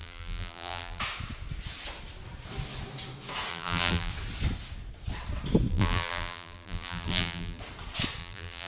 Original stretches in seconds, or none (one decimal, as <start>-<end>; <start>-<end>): 1.0-3.5; 4.1-5.7; 7.6-8.2